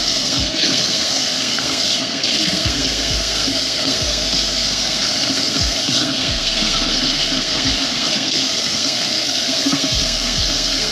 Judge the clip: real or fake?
fake